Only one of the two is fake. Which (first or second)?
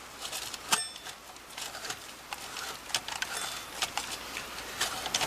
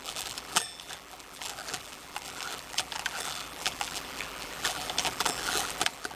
second